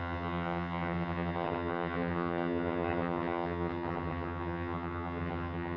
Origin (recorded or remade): remade